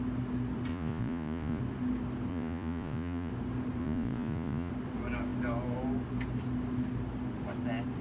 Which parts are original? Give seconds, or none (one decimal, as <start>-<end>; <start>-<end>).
0.0-0.7; 1.6-2.3; 3.3-3.8; 4.7-8.0